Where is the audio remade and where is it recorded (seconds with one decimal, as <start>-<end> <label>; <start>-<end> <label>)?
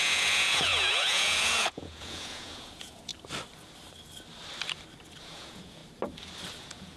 0.0-3.1 remade; 3.1-5.2 recorded; 5.2-5.8 remade; 5.8-6.6 recorded; 6.6-7.0 remade